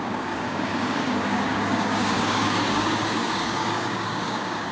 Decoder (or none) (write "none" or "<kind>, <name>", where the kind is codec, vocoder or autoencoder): codec, DAC